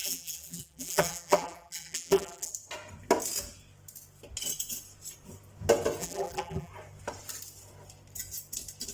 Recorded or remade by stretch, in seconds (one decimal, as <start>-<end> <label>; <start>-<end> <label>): 0.0-2.5 remade; 2.5-6.0 recorded; 6.0-6.7 remade; 6.7-8.9 recorded